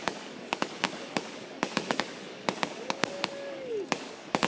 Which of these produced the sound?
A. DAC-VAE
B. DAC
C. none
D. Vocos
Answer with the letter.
B